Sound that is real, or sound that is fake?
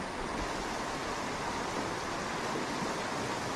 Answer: real